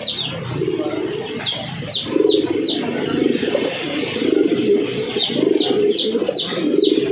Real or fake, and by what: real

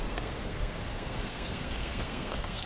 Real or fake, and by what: fake, codec, SNAC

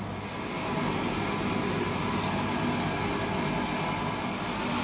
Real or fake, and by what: real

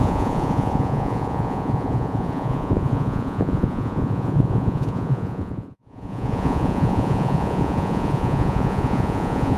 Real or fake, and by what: fake, vocoder, Vocos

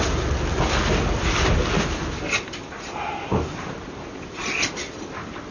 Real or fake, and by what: real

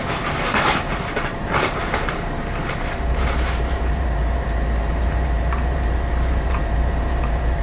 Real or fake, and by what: fake, vocoder, BigVGAN v2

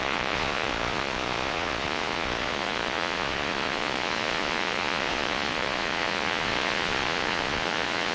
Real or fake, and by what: fake, vocoder, Vocos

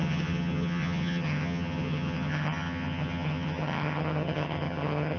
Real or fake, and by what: fake, vocoder, HiFi-GAN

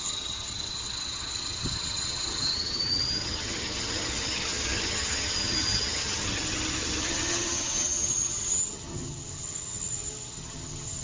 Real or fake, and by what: fake, vocoder, HiFi-GAN